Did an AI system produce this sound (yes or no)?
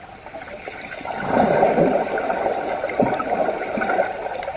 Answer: no